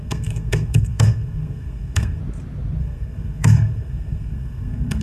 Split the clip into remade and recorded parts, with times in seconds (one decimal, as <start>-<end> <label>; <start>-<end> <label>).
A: 0.0-2.2 remade; 2.2-2.8 recorded; 2.8-5.0 remade